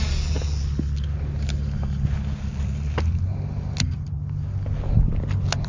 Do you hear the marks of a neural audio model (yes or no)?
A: no